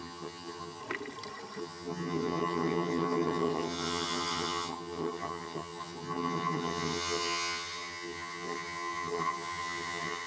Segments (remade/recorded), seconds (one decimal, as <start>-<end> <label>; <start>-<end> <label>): 0.0-0.8 remade; 0.8-1.6 recorded; 1.6-10.3 remade